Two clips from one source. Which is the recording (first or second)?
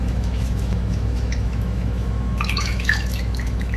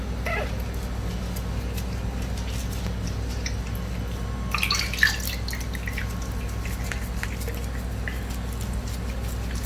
second